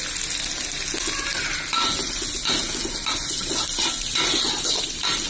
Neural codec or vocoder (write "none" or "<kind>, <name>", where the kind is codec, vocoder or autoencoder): none